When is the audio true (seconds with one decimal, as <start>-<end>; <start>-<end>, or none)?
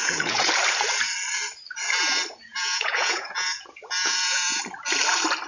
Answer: 0.5-2.5; 4.6-5.5